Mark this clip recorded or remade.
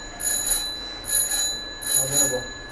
recorded